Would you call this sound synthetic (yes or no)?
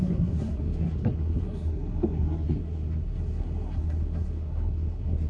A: yes